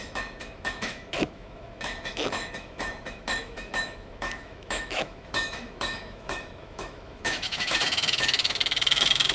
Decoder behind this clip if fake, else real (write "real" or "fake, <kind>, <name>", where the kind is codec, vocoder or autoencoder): fake, autoencoder, DAC-VAE